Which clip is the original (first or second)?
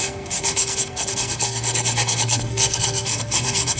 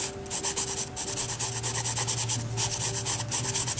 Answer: second